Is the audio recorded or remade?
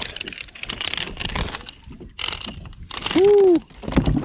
recorded